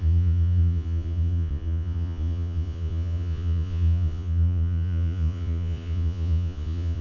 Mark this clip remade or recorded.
remade